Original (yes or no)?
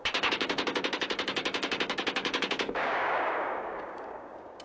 no